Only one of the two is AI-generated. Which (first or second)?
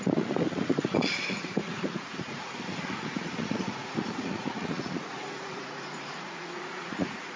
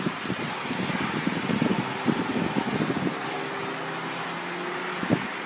first